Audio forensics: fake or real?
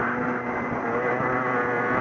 real